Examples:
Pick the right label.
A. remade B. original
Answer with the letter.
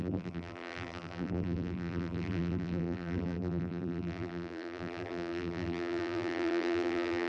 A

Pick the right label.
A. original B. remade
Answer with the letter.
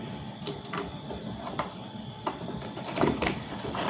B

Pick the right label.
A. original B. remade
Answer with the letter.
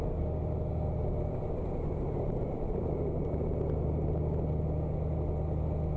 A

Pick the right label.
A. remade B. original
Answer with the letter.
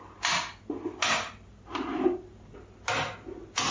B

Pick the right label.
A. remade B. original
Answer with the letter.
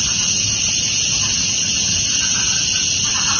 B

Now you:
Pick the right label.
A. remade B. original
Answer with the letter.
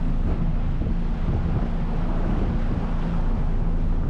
B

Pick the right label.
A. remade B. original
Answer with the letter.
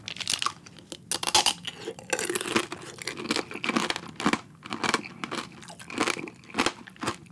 B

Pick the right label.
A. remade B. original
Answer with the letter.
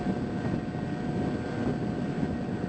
B